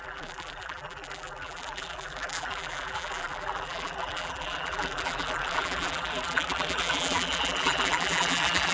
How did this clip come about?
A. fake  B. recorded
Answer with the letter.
A